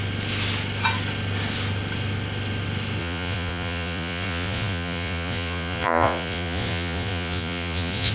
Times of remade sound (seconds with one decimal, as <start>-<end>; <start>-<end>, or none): 3.0-8.1